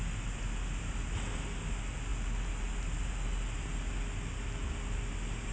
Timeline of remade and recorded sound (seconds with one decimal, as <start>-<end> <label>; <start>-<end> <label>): 0.0-5.5 recorded